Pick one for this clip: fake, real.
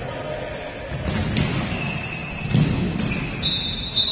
real